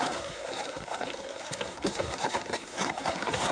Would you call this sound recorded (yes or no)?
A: no